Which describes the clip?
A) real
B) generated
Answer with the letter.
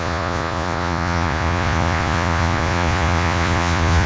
B